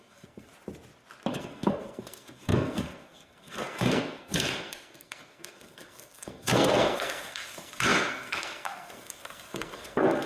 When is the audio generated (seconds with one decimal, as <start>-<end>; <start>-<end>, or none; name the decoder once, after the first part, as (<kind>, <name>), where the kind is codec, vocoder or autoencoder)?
0.0-0.5 (codec, SNAC); 1.3-10.3